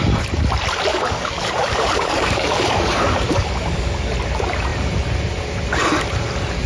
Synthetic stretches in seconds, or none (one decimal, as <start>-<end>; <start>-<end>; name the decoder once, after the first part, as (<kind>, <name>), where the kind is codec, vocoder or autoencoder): 0.9-4.1 (codec, DAC)